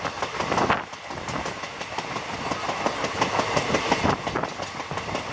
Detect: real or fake real